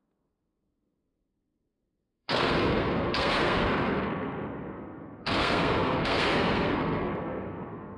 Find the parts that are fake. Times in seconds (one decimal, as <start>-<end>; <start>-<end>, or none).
0.0-8.0